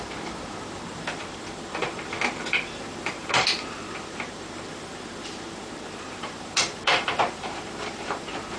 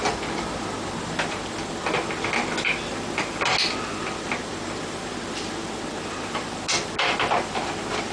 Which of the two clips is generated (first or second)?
first